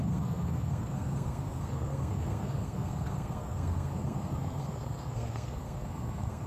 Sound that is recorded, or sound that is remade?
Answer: remade